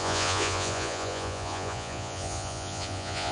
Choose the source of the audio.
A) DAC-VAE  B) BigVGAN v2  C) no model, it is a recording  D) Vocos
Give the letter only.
D